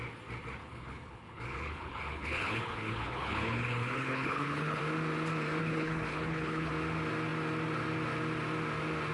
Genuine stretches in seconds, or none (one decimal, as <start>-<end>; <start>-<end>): 0.0-0.6; 4.8-5.6; 6.7-9.1